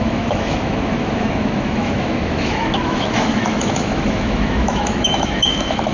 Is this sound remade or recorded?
remade